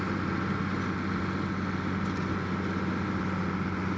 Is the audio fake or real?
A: real